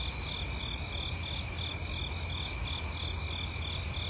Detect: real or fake real